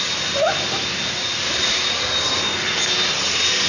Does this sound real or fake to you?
real